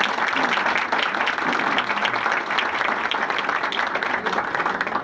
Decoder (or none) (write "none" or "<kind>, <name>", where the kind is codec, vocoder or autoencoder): none